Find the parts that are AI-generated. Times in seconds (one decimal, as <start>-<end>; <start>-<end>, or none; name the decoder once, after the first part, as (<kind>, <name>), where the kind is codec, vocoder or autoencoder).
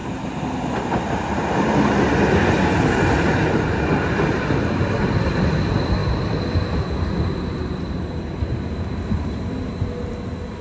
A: none